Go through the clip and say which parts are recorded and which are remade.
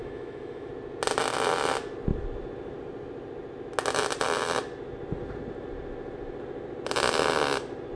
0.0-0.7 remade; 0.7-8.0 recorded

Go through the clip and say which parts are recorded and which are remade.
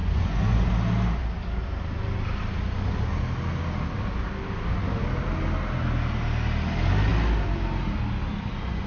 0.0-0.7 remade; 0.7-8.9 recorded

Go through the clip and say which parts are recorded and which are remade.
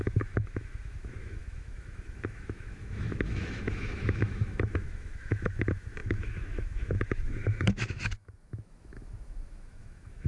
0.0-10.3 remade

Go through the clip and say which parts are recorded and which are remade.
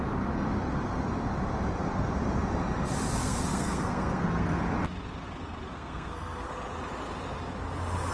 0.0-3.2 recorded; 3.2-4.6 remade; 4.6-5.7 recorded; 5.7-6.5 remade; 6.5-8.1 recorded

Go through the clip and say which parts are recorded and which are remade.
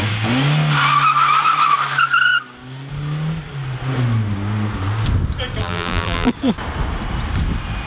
0.0-5.6 recorded; 5.6-6.3 remade; 6.3-7.9 recorded